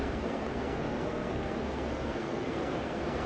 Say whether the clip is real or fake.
fake